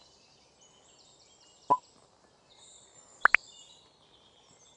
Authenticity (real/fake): fake